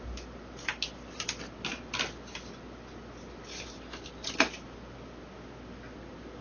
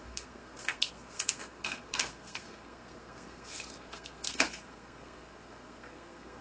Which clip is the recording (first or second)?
first